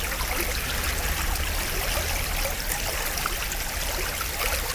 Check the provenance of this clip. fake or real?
real